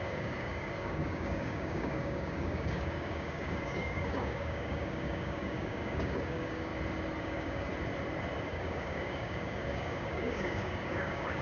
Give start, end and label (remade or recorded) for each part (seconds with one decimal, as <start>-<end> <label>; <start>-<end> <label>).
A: 0.0-6.7 remade; 6.7-7.2 recorded; 7.2-7.7 remade; 7.7-8.5 recorded; 8.5-11.4 remade